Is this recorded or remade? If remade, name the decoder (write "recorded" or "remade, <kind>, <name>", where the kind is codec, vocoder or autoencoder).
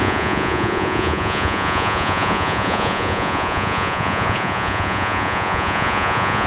remade, vocoder, Vocos